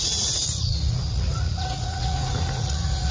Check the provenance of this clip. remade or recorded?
remade